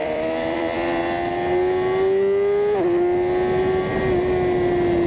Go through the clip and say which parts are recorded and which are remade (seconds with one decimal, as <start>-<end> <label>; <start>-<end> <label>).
0.0-1.0 remade; 1.0-5.1 recorded